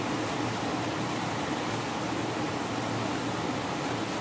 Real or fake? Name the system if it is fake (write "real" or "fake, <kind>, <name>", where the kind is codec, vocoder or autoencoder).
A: real